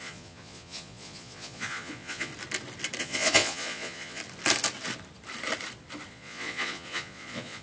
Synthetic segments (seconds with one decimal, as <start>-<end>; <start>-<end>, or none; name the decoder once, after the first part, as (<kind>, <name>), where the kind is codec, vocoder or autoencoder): 0.0-2.3 (vocoder, Vocos); 3.0-4.2; 6.1-7.6